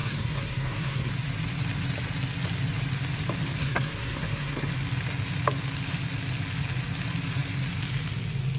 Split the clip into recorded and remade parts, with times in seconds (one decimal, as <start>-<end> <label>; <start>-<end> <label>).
0.0-1.1 remade; 1.1-3.6 recorded; 3.6-4.7 remade; 4.7-8.6 recorded